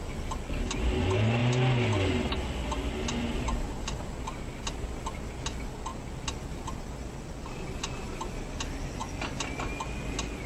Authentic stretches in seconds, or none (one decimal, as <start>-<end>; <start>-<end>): 0.0-10.5